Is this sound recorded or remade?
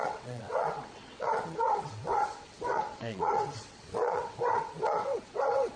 remade